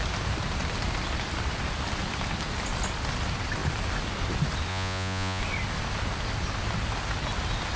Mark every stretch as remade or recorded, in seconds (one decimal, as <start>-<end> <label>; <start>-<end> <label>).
0.0-4.7 recorded; 4.7-5.4 remade; 5.4-7.8 recorded